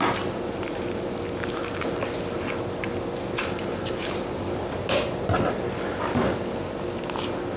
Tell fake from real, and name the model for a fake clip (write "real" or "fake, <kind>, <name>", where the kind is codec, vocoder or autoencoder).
real